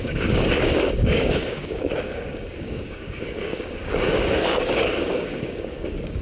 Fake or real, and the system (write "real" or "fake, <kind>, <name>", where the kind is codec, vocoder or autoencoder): fake, codec, DAC